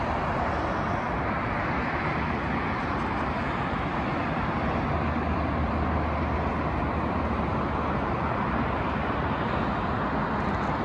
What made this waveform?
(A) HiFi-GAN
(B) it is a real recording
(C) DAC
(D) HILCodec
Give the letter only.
B